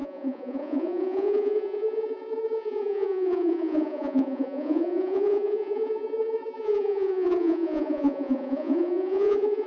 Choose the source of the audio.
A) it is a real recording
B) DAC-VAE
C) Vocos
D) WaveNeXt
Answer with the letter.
C